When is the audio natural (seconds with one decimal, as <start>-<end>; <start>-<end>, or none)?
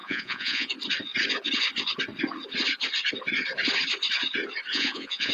0.7-4.7